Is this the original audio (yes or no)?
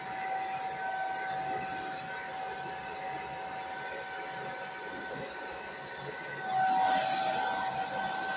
yes